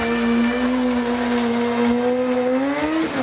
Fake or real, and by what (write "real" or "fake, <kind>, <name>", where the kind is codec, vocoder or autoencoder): real